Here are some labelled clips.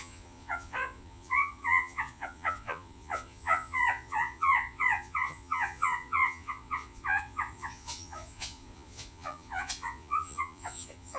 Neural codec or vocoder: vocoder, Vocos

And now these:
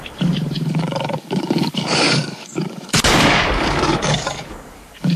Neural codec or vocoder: codec, DAC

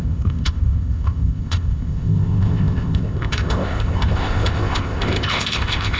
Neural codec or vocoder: codec, ZipCodec